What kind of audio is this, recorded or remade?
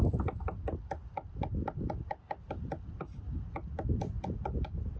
recorded